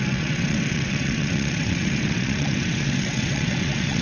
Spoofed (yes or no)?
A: yes